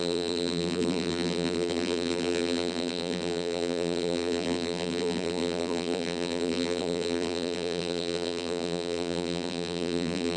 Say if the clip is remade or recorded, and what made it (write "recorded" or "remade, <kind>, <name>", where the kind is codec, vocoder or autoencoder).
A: remade, vocoder, BigVGAN v2